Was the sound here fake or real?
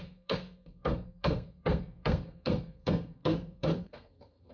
fake